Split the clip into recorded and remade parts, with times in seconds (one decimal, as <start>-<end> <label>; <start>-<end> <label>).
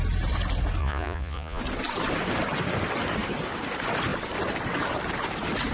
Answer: 0.0-0.8 recorded; 0.8-1.6 remade; 1.6-5.7 recorded